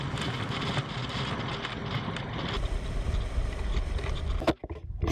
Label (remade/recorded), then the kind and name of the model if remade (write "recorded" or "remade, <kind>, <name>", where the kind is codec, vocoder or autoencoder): recorded